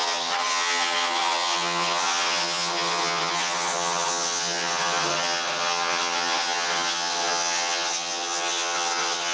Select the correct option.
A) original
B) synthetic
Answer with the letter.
B